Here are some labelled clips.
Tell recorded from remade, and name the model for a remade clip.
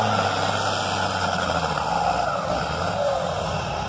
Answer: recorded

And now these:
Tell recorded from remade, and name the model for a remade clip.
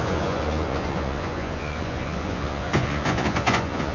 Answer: remade, vocoder, Vocos